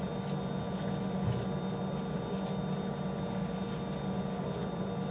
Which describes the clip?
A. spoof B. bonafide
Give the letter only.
B